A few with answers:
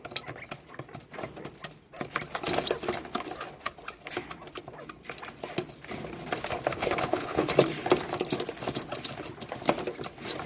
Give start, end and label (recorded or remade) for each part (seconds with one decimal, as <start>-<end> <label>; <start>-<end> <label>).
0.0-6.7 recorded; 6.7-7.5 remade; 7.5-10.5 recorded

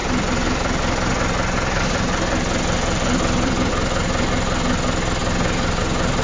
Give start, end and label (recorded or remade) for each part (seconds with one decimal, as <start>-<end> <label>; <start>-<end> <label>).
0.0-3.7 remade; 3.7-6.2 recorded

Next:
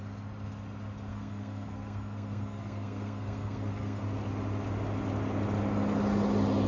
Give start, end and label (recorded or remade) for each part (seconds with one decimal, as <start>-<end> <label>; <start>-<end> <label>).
0.0-1.1 recorded; 1.1-4.0 remade; 4.0-6.7 recorded